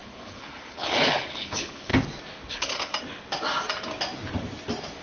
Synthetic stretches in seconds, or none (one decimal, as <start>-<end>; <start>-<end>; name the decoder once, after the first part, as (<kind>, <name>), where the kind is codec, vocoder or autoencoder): 0.0-1.9 (codec, HILCodec); 2.5-2.9